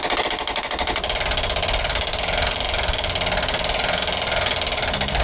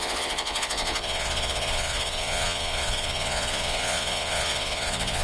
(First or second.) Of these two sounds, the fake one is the second